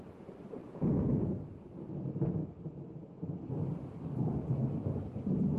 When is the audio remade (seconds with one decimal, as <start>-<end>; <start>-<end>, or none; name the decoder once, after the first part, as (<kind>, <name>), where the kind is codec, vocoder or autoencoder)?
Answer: 0.6-1.3 (vocoder, Vocos)